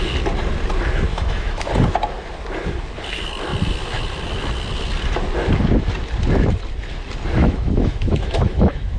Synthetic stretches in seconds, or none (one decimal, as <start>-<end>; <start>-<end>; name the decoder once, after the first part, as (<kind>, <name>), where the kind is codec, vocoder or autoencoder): 1.1-1.7 (autoencoder, DAC-VAE); 7.4-9.0